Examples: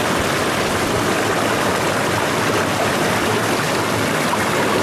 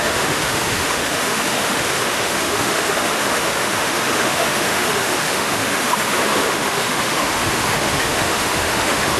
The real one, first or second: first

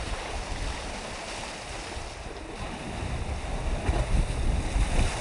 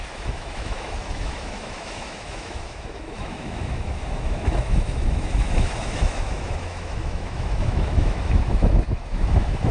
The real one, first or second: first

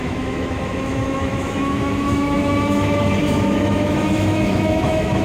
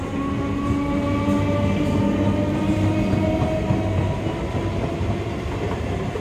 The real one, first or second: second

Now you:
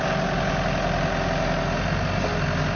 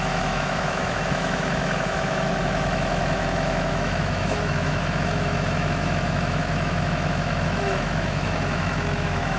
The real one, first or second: first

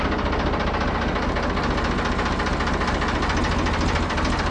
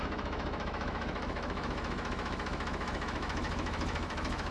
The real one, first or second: first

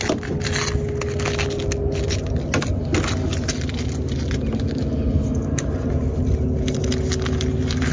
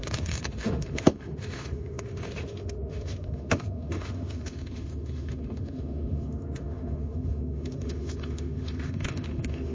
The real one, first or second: first